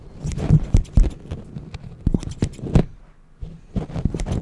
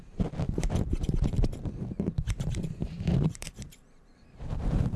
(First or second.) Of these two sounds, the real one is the first